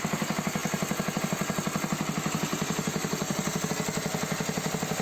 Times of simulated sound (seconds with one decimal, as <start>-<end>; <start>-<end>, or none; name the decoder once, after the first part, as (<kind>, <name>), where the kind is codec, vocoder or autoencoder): 2.5-3.7 (vocoder, BigVGAN v2)